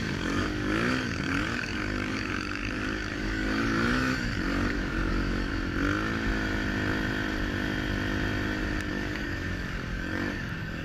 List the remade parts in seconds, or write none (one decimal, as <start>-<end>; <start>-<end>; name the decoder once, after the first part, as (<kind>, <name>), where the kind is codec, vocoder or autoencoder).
0.0-5.5 (codec, DAC); 8.9-10.8